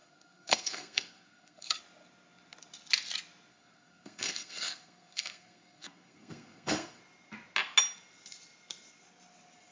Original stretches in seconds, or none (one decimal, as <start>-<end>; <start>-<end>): 1.8-3.5; 7.0-9.7